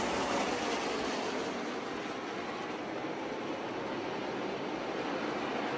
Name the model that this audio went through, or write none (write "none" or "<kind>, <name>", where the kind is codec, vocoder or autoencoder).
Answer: none